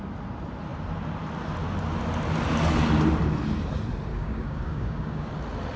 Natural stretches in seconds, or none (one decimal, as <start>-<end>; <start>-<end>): 0.0-4.1; 5.3-5.8